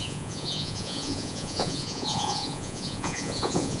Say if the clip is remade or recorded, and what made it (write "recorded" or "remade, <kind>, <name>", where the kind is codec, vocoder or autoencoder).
remade, vocoder, Vocos